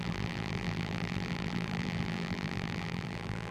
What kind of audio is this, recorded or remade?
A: remade